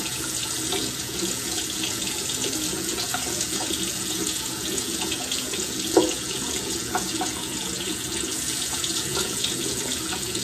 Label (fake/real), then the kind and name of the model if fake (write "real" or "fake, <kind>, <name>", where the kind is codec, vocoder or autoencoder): fake, vocoder, Vocos